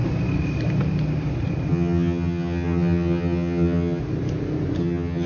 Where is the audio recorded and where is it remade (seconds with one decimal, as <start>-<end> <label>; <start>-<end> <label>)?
0.0-1.7 recorded; 1.7-4.0 remade; 4.0-4.8 recorded; 4.8-5.3 remade